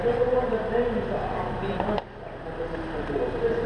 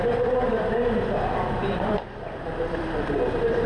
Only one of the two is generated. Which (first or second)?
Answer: second